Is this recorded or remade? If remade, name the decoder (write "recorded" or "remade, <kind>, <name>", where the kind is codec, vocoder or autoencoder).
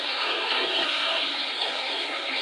remade, codec, SNAC